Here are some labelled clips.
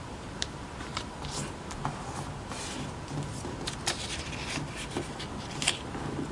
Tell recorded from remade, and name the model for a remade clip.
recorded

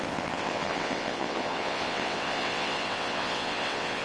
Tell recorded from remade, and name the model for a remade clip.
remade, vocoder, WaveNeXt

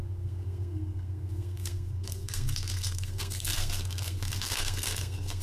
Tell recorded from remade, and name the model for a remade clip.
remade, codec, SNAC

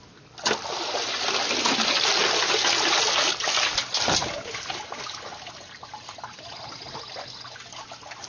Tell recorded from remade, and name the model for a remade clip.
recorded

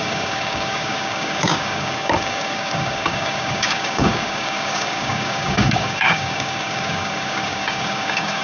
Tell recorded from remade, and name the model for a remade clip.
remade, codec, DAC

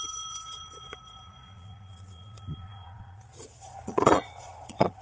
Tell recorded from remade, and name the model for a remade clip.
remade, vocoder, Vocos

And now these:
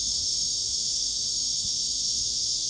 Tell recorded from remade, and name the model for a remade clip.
remade, autoencoder, DAC-VAE